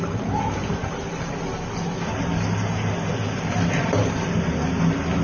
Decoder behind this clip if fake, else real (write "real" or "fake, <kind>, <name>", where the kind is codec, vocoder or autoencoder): real